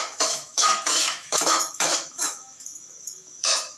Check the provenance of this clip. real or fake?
fake